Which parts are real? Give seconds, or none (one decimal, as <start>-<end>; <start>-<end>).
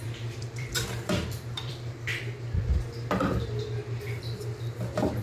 2.1-5.2